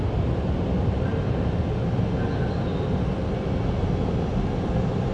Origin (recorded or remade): recorded